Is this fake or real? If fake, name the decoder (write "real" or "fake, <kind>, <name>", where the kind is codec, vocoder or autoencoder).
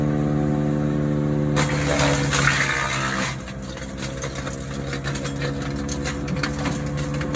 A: real